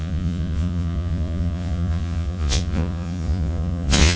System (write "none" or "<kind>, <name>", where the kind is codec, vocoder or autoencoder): vocoder, Vocos